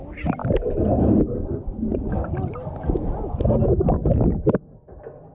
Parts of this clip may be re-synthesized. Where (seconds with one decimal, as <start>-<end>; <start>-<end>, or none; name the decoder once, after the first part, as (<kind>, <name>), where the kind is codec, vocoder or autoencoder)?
none